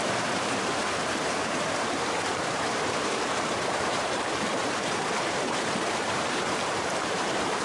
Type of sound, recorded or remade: remade